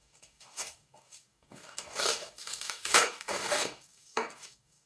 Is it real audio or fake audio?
fake